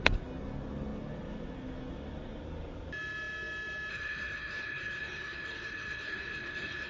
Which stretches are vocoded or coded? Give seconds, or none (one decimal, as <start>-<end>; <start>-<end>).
3.9-6.9